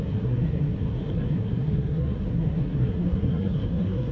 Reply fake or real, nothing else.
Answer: fake